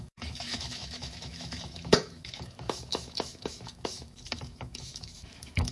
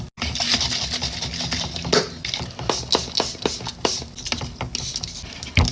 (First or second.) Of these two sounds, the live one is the second